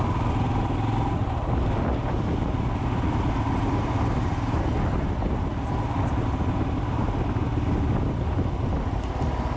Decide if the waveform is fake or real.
real